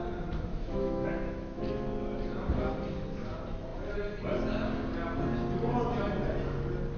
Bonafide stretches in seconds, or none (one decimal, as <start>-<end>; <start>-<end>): 0.0-0.5; 1.6-7.0